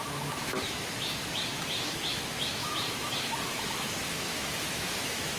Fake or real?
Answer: fake